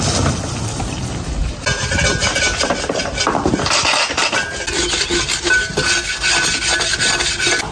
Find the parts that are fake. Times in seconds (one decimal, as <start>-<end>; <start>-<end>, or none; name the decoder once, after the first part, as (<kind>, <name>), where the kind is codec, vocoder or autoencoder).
none